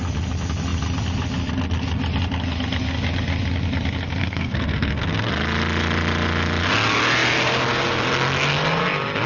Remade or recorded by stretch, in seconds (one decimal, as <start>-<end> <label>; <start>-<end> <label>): 0.0-4.2 recorded; 4.2-5.3 remade; 5.3-9.3 recorded